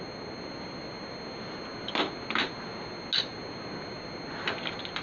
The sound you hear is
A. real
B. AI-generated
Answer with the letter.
A